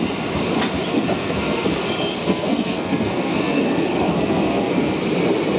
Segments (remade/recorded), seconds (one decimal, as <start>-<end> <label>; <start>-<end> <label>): 0.0-0.9 recorded; 0.9-1.8 remade; 1.8-2.2 recorded; 2.2-5.0 remade; 5.0-5.6 recorded